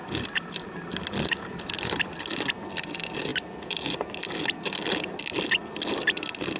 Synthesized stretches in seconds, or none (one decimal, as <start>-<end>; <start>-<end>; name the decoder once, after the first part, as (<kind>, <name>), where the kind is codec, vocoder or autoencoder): none

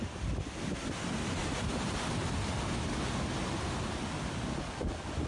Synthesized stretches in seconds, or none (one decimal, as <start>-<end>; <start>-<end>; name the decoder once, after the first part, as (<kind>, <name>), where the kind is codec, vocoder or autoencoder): none

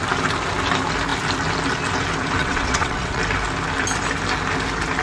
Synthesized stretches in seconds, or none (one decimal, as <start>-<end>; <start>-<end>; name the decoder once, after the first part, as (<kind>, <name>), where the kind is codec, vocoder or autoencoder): 2.4-3.2 (vocoder, WaveNeXt)

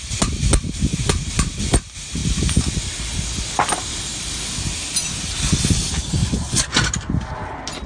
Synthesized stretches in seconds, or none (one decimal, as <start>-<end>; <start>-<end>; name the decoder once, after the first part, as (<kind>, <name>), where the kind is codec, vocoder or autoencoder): 6.2-6.9 (vocoder, Vocos)